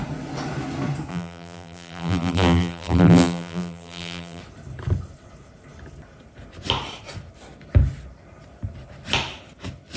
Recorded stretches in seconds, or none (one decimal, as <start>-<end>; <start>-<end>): 0.0-1.1; 4.4-10.0